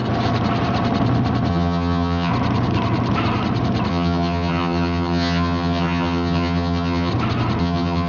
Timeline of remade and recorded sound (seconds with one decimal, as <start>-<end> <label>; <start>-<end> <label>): 0.0-1.5 recorded; 1.5-2.3 remade; 2.3-3.9 recorded; 3.9-7.1 remade; 7.1-7.6 recorded; 7.6-8.1 remade